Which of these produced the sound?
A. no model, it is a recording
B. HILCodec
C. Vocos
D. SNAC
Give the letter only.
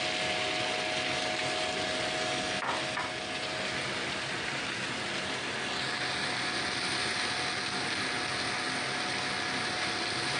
A